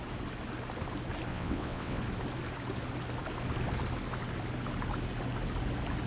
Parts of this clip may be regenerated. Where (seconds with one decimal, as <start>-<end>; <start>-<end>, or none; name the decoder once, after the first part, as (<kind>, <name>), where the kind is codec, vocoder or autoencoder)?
1.3-2.0 (vocoder, WaveNeXt)